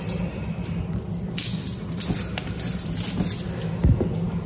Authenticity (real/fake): real